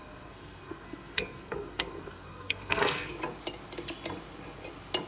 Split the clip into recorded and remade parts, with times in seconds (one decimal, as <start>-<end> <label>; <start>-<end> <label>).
0.0-3.1 remade; 3.1-5.1 recorded